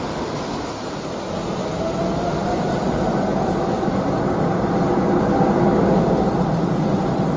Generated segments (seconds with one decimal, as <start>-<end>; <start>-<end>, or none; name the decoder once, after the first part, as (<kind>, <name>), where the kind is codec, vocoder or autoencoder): none